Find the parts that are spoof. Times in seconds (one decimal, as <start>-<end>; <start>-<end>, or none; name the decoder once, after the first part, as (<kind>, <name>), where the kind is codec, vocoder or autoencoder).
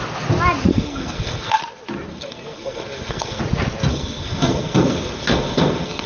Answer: 0.7-1.6 (codec, SNAC); 2.1-3.4; 3.9-6.1